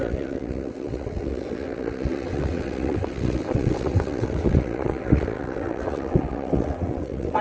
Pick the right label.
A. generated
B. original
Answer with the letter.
A